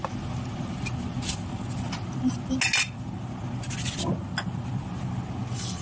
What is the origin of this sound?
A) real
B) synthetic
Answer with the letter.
A